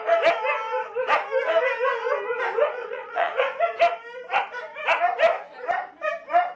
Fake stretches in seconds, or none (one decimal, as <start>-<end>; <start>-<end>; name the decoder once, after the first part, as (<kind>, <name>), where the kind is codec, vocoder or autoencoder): 2.8-3.6 (vocoder, WaveNeXt)